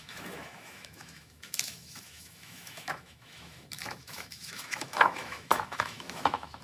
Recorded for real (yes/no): no